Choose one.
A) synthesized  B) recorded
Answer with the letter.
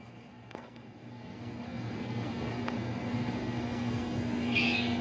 A